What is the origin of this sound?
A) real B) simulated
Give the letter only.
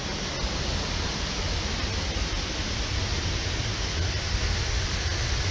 A